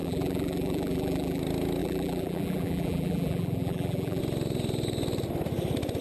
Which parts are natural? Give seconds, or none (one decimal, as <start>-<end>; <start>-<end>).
1.4-1.8; 4.2-6.0

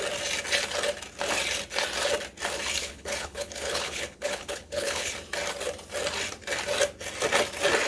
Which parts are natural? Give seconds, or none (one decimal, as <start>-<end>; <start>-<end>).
0.0-2.8; 5.1-7.9

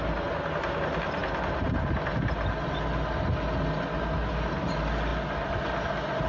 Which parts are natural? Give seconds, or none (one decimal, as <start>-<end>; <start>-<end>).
0.0-6.3

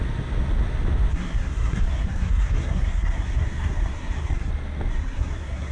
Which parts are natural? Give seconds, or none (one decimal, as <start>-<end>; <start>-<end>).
0.0-1.1; 4.5-4.9

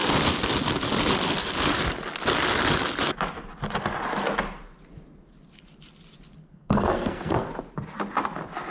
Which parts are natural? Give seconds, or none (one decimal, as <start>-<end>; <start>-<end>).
0.0-6.4; 7.5-8.7

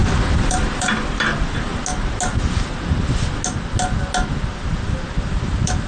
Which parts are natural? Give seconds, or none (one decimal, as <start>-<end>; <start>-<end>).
1.7-5.2